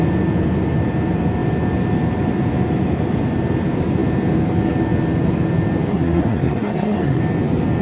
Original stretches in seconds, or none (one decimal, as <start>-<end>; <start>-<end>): 0.0-5.9; 7.2-7.8